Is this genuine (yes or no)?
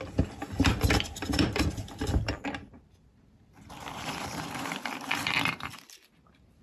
no